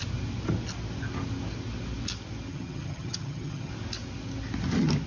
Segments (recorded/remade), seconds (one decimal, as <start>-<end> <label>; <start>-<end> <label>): 0.0-2.5 recorded; 2.5-3.7 remade; 3.7-5.1 recorded